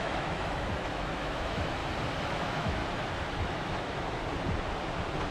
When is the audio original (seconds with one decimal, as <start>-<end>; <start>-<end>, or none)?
1.8-2.3; 2.8-3.4; 4.2-5.3